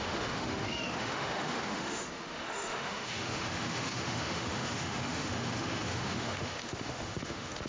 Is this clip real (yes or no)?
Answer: no